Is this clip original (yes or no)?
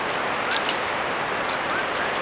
yes